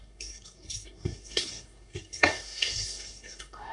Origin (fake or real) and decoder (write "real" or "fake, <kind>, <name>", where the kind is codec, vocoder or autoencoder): fake, codec, SNAC